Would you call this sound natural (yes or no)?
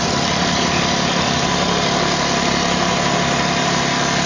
yes